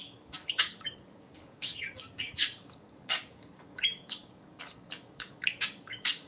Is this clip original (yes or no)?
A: no